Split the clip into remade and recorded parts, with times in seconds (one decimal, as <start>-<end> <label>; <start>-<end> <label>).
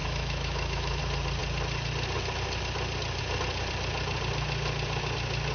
0.0-1.0 remade; 1.0-5.5 recorded